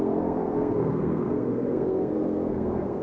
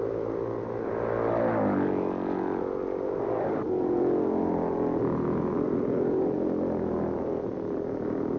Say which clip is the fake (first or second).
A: first